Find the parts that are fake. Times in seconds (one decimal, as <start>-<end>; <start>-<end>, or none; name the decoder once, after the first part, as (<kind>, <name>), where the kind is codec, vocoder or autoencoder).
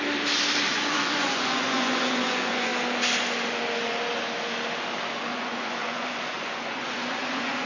0.7-2.7 (vocoder, Vocos); 5.3-7.7